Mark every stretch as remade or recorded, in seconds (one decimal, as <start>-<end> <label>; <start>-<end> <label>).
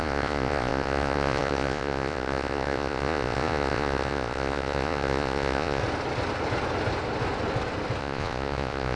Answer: 0.0-5.8 remade; 5.8-8.0 recorded; 8.0-9.0 remade